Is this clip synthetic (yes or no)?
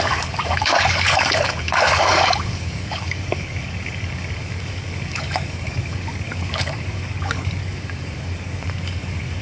yes